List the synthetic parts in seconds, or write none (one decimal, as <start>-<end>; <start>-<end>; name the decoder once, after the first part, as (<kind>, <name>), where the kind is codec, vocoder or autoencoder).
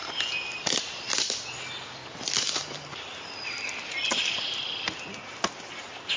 0.0-0.8 (vocoder, BigVGAN v2); 2.0-5.0